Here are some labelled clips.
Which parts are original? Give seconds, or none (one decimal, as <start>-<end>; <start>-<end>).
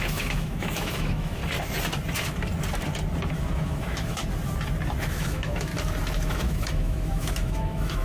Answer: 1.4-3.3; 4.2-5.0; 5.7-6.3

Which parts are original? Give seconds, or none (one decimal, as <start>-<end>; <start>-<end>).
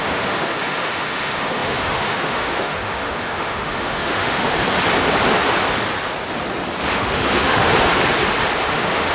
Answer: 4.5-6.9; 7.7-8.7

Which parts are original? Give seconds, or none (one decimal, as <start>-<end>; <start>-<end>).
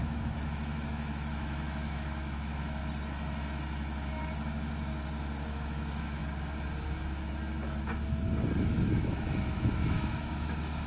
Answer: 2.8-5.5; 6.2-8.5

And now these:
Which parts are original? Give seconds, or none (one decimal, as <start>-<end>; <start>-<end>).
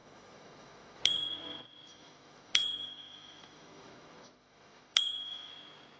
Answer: 1.0-1.9; 5.5-6.0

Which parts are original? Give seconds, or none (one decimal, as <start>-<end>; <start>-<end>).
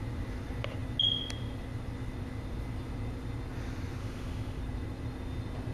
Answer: 0.0-4.0; 4.6-5.7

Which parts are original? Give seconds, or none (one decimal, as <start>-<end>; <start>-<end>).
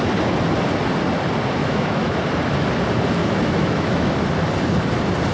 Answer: 0.0-1.6; 2.2-3.2; 4.1-5.3